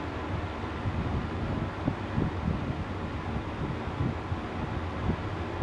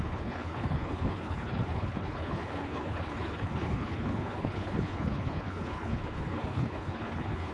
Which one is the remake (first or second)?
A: second